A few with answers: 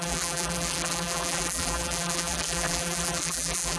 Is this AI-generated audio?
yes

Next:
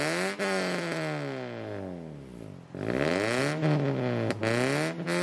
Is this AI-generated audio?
no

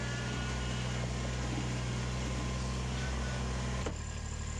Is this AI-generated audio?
no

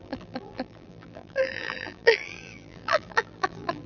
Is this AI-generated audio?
yes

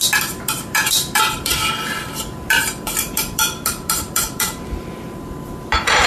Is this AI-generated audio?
yes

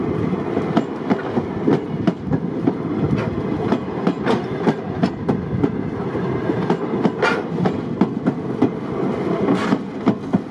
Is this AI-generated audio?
no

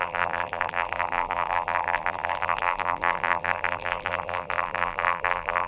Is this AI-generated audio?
yes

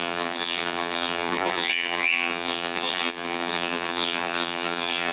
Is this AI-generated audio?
yes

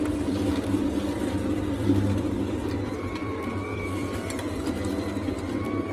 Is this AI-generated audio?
yes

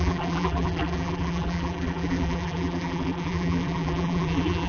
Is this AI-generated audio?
yes